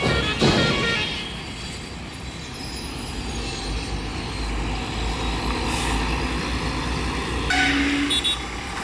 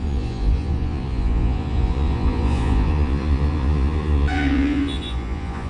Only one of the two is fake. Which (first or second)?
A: second